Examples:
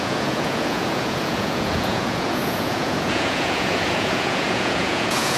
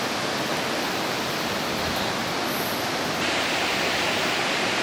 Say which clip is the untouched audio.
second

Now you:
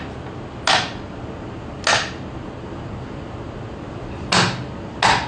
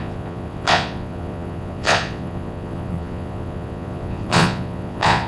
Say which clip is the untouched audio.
first